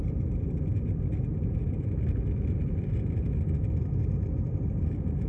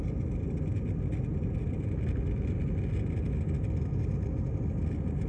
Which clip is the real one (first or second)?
second